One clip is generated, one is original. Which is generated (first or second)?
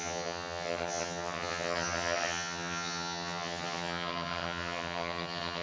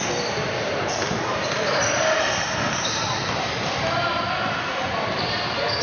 first